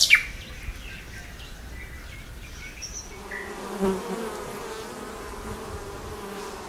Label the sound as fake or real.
real